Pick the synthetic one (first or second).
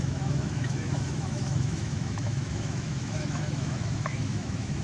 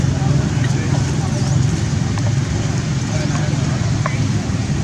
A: first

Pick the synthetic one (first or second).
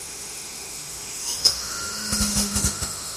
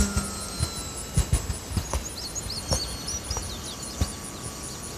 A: first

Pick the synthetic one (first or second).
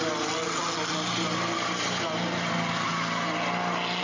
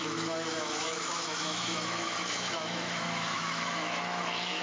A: second